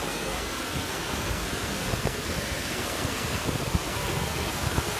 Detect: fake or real fake